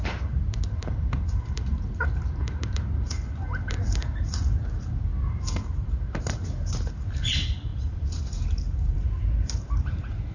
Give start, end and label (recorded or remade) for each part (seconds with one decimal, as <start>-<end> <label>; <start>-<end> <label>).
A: 0.0-10.3 remade